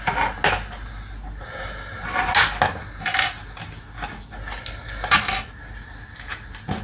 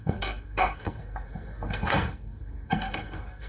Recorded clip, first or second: first